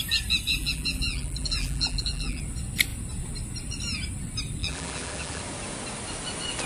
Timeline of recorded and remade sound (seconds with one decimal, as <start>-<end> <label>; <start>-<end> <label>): 0.0-0.5 recorded; 0.5-2.4 remade; 2.4-4.6 recorded; 4.6-5.4 remade; 5.4-6.7 recorded